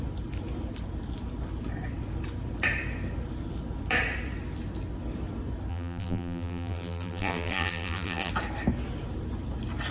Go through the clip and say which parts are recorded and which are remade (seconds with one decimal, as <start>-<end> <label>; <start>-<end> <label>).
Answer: 0.0-5.7 recorded; 5.7-8.3 remade; 8.3-9.9 recorded